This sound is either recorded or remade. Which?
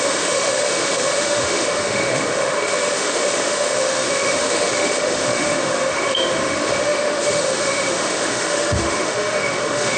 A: remade